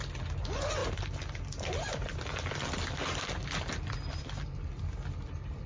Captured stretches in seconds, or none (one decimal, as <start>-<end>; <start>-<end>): 0.0-5.7